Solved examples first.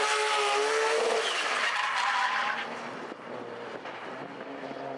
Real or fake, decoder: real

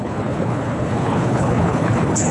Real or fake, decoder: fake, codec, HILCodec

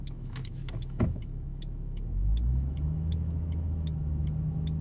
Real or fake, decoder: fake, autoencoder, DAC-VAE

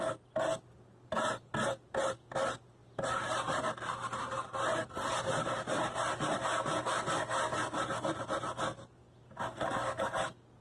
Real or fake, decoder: real